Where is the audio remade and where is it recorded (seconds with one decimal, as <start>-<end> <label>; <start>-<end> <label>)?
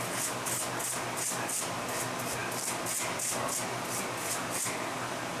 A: 0.0-5.4 recorded